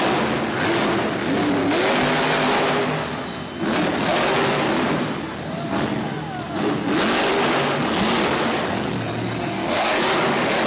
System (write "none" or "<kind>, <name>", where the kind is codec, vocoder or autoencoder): none